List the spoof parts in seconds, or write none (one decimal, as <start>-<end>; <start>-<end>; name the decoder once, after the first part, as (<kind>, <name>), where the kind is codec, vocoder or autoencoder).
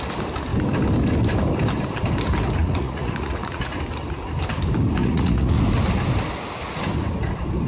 2.6-3.8 (vocoder, Vocos); 5.0-5.6